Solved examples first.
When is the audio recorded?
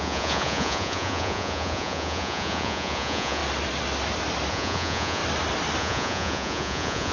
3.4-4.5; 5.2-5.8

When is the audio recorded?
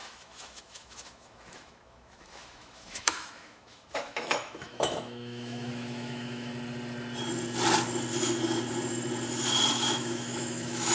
6.5-9.7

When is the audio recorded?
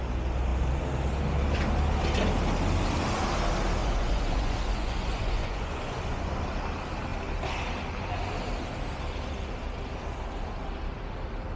0.0-3.8; 6.3-11.6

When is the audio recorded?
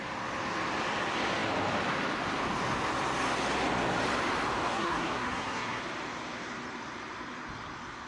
0.0-4.7; 5.8-8.1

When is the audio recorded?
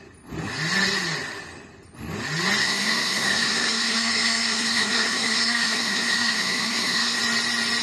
0.0-2.6; 7.2-7.8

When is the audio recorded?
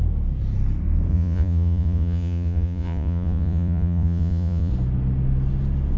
0.0-1.1; 4.7-6.0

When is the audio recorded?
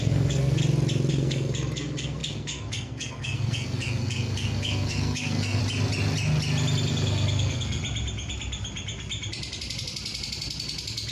0.6-1.1; 5.6-6.9; 7.8-11.1